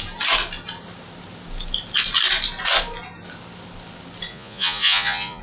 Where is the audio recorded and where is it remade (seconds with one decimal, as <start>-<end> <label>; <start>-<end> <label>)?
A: 0.0-4.3 recorded; 4.3-5.4 remade